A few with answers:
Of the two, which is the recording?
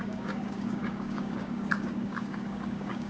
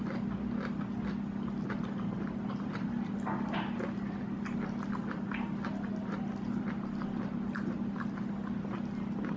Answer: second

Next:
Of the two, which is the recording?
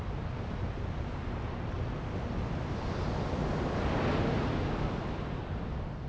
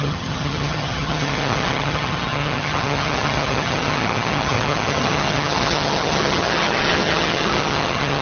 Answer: first